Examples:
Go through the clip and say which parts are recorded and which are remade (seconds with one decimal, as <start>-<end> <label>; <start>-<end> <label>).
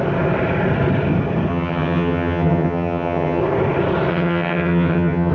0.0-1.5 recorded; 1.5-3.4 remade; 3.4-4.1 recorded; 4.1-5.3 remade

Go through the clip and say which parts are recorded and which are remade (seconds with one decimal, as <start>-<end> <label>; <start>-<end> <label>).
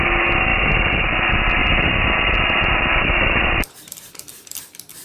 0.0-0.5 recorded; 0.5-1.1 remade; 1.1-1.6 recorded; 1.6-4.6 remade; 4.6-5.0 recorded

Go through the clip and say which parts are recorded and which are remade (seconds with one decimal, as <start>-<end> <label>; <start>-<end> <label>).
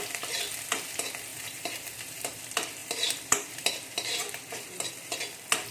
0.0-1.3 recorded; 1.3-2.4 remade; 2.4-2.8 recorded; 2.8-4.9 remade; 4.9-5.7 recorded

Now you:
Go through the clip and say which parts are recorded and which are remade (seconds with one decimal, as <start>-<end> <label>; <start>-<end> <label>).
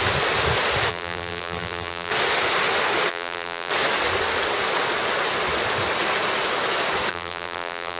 0.0-0.9 recorded; 0.9-2.1 remade; 2.1-3.1 recorded; 3.1-3.7 remade; 3.7-7.1 recorded; 7.1-8.0 remade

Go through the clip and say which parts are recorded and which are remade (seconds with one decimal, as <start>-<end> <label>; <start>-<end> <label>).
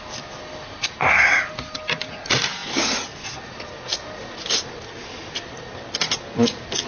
0.0-6.9 recorded